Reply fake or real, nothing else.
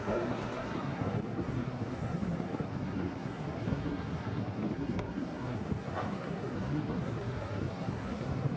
fake